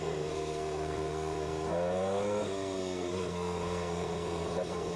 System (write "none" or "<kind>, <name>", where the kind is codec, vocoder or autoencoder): codec, SNAC